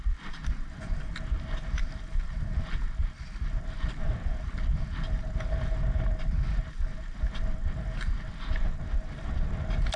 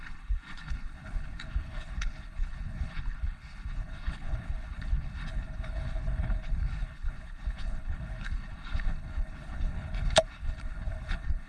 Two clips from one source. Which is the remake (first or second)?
second